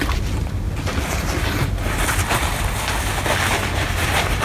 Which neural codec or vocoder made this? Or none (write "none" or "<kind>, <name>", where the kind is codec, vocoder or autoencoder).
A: none